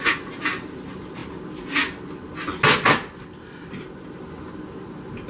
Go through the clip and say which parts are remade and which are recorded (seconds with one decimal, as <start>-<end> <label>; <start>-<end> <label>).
0.0-5.3 recorded